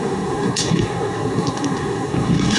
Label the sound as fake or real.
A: fake